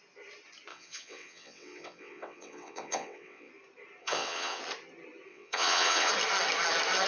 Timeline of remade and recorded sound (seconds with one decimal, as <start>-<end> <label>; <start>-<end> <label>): 0.0-0.7 recorded; 0.7-3.5 remade; 3.5-4.0 recorded; 4.0-4.6 remade; 4.6-5.3 recorded; 5.3-6.1 remade; 6.1-7.1 recorded